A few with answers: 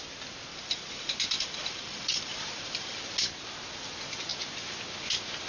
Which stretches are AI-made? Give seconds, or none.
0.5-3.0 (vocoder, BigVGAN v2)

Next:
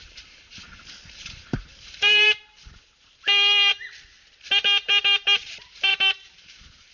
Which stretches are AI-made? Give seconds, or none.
0.0-3.7 (vocoder, BigVGAN v2); 5.4-6.9

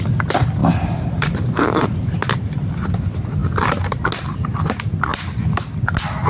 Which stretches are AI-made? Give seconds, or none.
0.6-2.9 (vocoder, BigVGAN v2); 3.4-4.0; 5.1-6.3